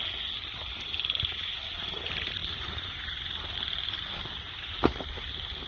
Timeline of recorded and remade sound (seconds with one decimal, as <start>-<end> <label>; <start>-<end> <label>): 0.0-5.7 recorded